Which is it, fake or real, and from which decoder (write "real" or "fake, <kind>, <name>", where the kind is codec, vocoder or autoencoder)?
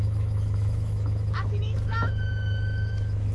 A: fake, autoencoder, DAC-VAE